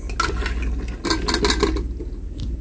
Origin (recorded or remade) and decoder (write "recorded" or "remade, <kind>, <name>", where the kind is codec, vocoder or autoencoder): recorded